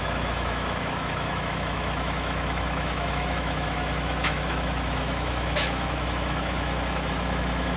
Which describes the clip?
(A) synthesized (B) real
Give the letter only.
A